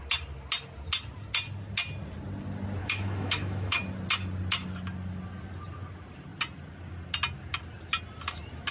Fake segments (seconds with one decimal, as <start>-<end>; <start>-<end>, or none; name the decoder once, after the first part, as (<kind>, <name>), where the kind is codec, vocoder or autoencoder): 2.8-3.8 (autoencoder, DAC-VAE)